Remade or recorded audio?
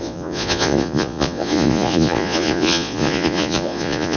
remade